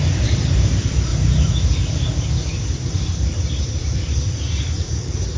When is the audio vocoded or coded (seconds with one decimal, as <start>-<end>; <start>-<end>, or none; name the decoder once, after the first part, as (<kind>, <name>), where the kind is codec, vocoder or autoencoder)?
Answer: 0.0-1.1 (vocoder, BigVGAN v2); 3.6-5.4